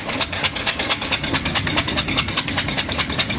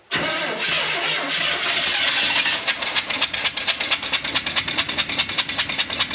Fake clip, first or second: first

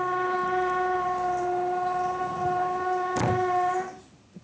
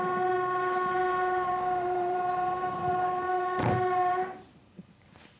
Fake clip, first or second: second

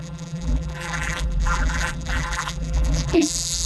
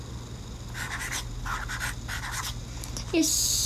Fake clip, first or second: first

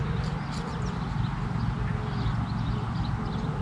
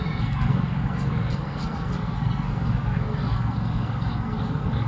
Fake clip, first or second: second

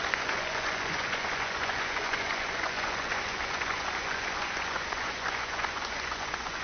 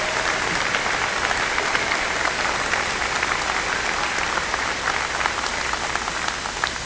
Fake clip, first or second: first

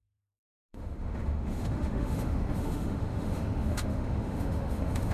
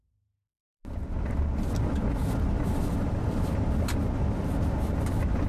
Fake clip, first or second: first